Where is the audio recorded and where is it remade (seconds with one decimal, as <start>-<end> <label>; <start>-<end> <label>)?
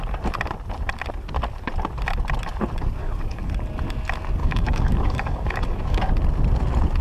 0.0-3.0 recorded; 3.0-3.5 remade; 3.5-4.4 recorded; 4.4-6.1 remade; 6.1-7.0 recorded